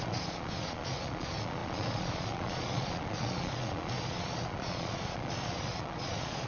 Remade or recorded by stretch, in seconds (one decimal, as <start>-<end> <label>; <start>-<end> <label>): 0.0-6.5 remade